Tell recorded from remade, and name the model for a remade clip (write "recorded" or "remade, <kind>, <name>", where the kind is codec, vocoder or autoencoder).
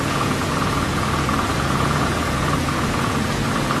remade, vocoder, Vocos